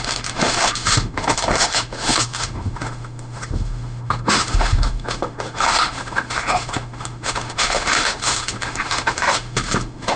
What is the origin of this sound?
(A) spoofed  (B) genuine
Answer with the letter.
A